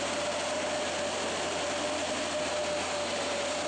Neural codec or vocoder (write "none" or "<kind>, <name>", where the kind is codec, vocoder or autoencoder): none